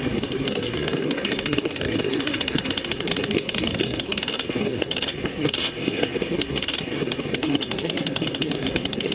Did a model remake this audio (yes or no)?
yes